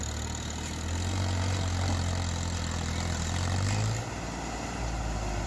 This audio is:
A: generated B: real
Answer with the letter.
B